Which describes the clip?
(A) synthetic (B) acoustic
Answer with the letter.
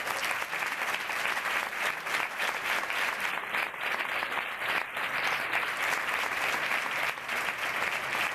B